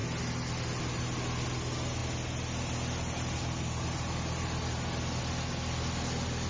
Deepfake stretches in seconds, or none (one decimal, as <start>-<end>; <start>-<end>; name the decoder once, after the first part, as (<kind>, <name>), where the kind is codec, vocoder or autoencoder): none